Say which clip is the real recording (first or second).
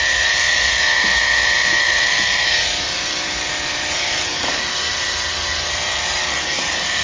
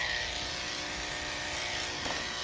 second